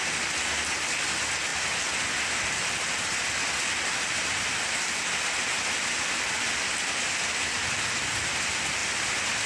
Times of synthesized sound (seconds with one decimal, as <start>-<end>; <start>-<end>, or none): none

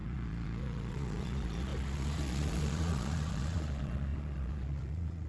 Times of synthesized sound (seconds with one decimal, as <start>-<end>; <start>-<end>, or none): 0.0-5.3

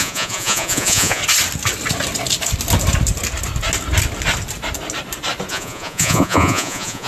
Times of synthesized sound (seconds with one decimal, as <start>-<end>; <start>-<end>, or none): 0.0-1.2; 5.5-7.1

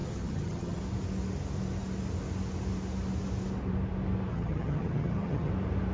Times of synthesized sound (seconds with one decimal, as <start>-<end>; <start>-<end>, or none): 0.0-0.8; 4.3-5.5

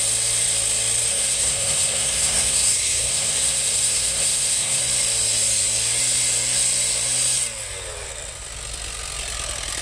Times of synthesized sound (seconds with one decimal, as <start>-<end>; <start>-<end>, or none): 1.1-4.8